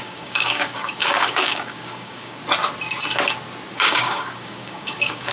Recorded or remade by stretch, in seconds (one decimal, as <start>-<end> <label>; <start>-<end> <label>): 0.0-2.4 remade; 2.4-3.7 recorded; 3.7-5.3 remade